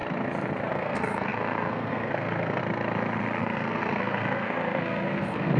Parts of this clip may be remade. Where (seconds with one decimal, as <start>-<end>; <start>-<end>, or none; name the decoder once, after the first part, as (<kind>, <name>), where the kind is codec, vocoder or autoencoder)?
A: 0.7-2.6 (codec, SNAC); 3.4-5.6